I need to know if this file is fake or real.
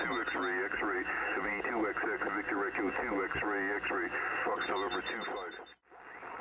real